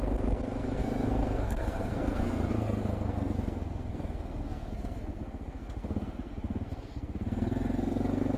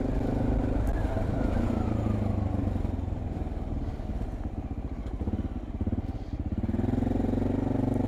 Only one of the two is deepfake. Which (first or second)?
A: first